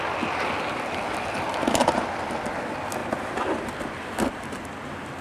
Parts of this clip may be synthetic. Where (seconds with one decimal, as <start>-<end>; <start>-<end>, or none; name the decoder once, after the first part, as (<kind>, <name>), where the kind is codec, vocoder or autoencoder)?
1.8-2.5 (vocoder, BigVGAN v2); 3.0-3.6